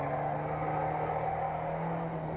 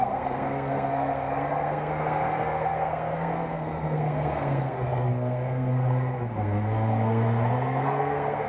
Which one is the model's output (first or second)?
second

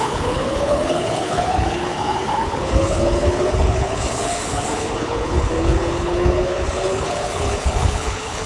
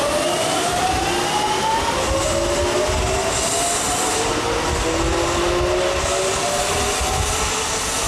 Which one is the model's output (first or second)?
first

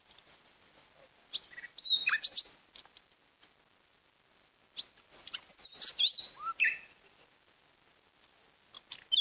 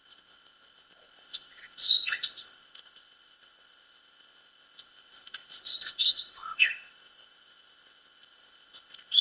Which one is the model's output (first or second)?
second